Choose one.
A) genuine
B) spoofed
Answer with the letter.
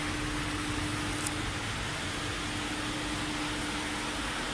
A